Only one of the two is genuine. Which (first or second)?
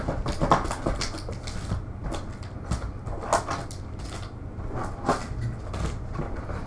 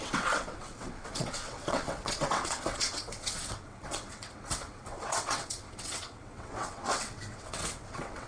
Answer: first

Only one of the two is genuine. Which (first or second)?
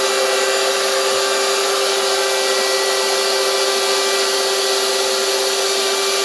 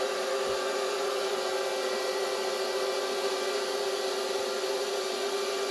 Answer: first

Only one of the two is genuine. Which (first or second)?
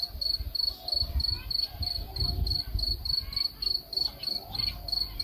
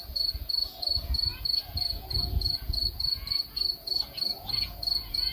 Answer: first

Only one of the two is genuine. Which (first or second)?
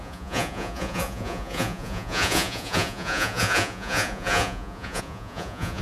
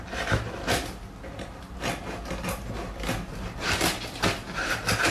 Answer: second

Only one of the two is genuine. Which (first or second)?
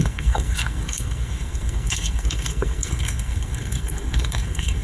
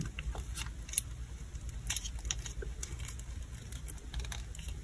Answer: second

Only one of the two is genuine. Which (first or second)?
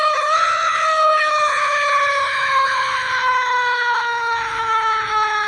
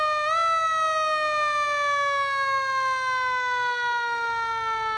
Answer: second